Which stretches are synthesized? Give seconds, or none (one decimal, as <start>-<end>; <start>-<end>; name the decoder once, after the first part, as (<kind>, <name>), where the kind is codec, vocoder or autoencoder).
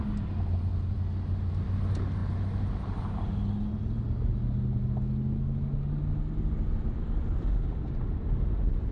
none